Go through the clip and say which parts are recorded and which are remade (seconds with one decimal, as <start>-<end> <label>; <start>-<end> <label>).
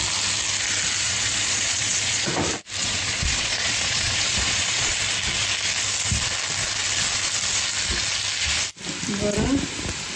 0.0-1.0 recorded; 1.0-2.3 remade; 2.3-2.8 recorded; 2.8-4.9 remade; 4.9-10.2 recorded